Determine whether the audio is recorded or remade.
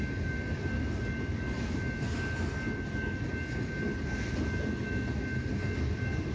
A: recorded